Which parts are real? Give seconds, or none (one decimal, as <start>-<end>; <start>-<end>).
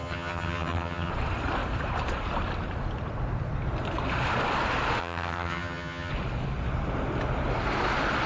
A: 1.1-5.0; 6.1-8.3